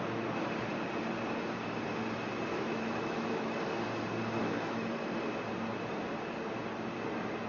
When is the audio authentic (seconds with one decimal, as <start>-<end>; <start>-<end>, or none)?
0.0-2.5; 3.6-4.4; 5.0-7.5